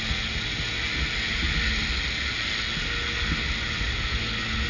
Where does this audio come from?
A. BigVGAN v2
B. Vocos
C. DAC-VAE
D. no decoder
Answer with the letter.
D